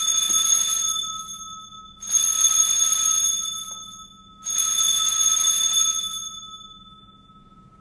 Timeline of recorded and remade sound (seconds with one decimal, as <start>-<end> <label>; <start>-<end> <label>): 0.0-7.8 recorded